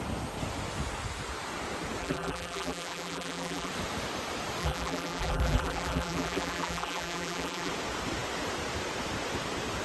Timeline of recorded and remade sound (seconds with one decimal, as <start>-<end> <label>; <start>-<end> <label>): 0.0-2.0 recorded; 2.0-3.7 remade; 3.7-4.6 recorded; 4.6-7.7 remade; 7.7-9.8 recorded